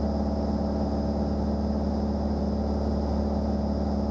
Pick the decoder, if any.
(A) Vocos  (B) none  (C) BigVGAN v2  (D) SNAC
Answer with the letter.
B